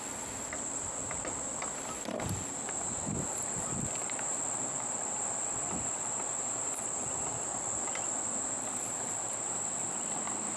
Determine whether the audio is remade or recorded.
recorded